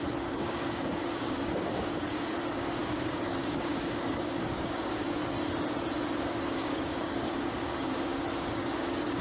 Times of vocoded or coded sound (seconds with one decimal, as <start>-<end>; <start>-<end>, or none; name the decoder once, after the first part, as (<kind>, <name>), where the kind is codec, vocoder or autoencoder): 0.0-5.2 (codec, DAC); 6.3-9.2